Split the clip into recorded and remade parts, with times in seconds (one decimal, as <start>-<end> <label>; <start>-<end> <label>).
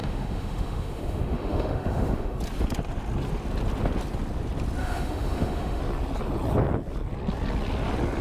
0.0-2.4 remade; 2.4-4.8 recorded; 4.8-5.8 remade; 5.8-8.2 recorded